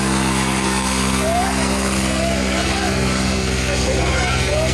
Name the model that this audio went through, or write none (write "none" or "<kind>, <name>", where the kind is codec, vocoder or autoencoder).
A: codec, SNAC